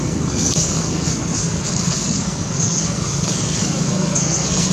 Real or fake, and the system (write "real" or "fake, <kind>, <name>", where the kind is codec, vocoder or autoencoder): fake, codec, SNAC